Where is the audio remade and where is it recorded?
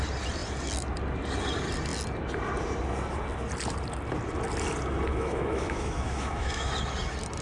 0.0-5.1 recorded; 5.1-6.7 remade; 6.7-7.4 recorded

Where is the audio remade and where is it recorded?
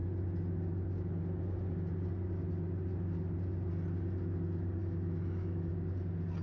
0.0-4.8 recorded; 4.8-5.7 remade; 5.7-6.4 recorded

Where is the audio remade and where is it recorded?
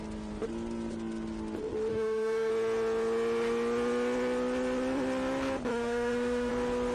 0.0-1.9 recorded; 1.9-2.5 remade; 2.5-5.7 recorded; 5.7-6.5 remade; 6.5-6.9 recorded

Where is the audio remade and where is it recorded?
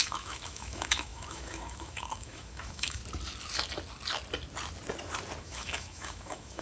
0.0-3.0 remade; 3.0-5.4 recorded; 5.4-6.6 remade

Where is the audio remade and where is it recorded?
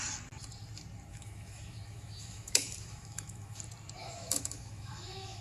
0.0-1.1 recorded; 1.1-3.6 remade; 3.6-4.0 recorded; 4.0-5.4 remade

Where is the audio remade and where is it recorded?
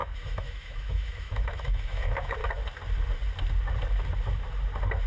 0.0-2.4 remade; 2.4-5.1 recorded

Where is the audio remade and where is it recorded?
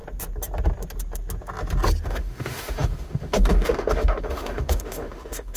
0.0-2.0 recorded; 2.0-5.6 remade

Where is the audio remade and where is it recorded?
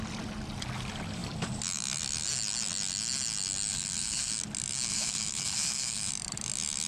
0.0-3.7 recorded; 3.7-4.3 remade; 4.3-4.9 recorded; 4.9-6.1 remade; 6.1-6.9 recorded